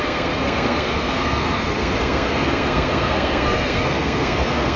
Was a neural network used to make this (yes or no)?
yes